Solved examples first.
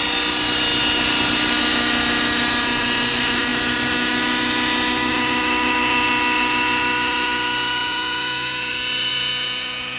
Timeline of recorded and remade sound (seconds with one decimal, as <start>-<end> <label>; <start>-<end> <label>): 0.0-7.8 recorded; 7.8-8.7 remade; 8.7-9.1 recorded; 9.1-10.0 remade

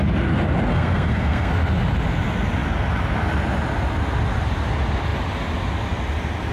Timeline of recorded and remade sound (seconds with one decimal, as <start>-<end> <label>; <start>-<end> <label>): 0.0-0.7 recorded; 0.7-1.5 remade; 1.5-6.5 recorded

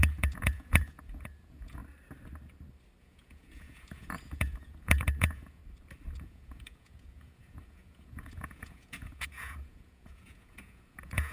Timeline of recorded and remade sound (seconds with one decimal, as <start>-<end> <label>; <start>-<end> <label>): 0.0-1.8 remade; 1.8-3.0 recorded; 3.0-5.6 remade; 5.6-6.2 recorded; 6.2-11.3 remade

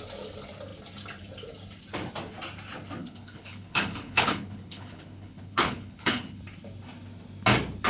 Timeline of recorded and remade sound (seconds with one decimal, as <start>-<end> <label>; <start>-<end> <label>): 0.0-3.0 recorded; 3.0-6.4 remade; 6.4-7.9 recorded

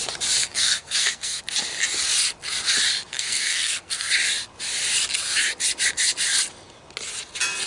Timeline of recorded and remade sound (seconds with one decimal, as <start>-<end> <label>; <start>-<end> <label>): 0.0-0.4 recorded; 0.4-1.4 remade; 1.4-3.1 recorded; 3.1-4.1 remade; 4.1-7.7 recorded